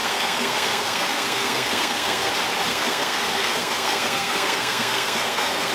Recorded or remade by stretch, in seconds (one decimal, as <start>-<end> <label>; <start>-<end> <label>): 0.0-2.3 remade; 2.3-2.7 recorded; 2.7-5.7 remade